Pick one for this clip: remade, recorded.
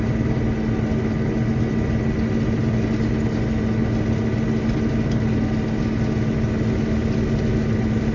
recorded